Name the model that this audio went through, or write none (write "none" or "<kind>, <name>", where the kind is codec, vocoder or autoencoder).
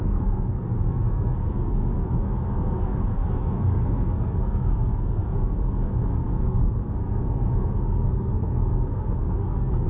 codec, SNAC